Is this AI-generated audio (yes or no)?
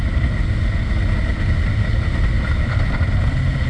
no